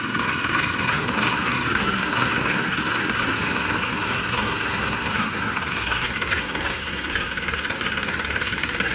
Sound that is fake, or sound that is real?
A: fake